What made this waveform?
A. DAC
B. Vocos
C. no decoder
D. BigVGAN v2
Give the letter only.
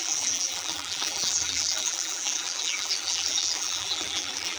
D